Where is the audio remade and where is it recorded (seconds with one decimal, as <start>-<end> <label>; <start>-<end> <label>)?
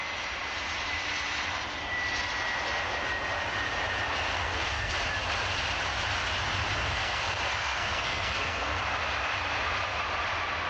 0.0-4.3 recorded; 4.3-4.9 remade; 4.9-6.8 recorded; 6.8-8.8 remade; 8.8-10.7 recorded